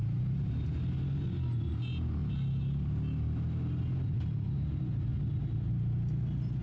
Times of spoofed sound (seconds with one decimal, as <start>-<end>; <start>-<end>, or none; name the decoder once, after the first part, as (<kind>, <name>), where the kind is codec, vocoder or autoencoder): none